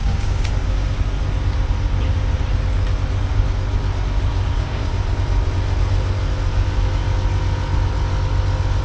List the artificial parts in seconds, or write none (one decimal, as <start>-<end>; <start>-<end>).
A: 0.0-1.0; 4.3-4.9